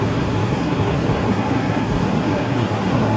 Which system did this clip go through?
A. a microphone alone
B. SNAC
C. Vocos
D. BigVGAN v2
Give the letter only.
B